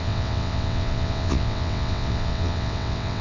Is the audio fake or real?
fake